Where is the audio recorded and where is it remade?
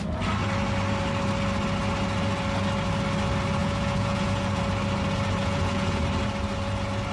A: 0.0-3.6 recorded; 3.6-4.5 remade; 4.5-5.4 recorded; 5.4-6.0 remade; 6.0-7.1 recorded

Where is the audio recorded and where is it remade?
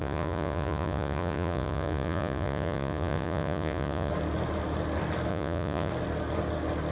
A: 0.0-4.1 remade; 4.1-5.3 recorded; 5.3-5.9 remade; 5.9-6.9 recorded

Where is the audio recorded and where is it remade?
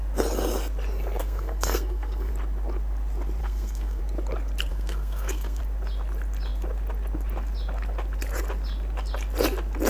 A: 0.0-1.2 recorded; 1.2-2.3 remade; 2.3-3.4 recorded; 3.4-4.0 remade; 4.0-4.7 recorded; 4.7-5.6 remade; 5.6-9.9 recorded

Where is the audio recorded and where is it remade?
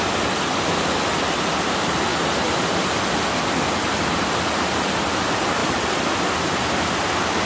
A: 0.0-7.5 recorded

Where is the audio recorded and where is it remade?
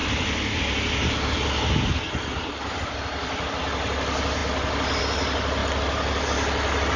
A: 0.0-7.0 recorded